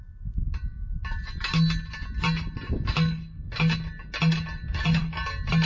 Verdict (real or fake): real